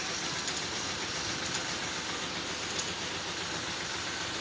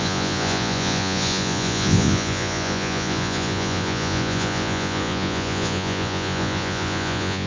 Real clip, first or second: first